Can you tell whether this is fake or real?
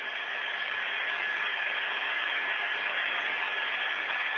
fake